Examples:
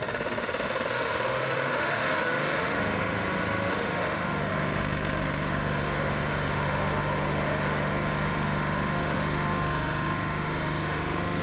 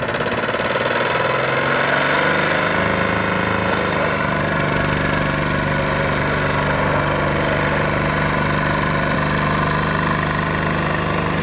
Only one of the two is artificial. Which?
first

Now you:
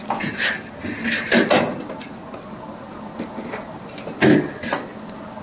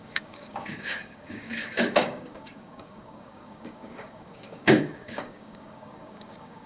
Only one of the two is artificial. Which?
second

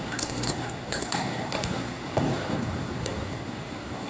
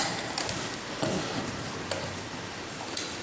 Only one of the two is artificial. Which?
first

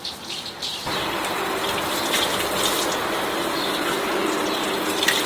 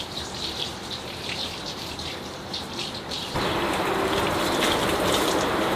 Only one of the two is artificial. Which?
second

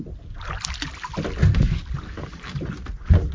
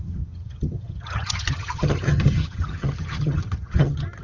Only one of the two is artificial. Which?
second